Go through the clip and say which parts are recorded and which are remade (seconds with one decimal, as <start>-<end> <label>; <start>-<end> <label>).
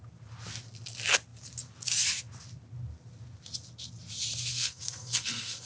0.0-4.5 recorded; 4.5-5.7 remade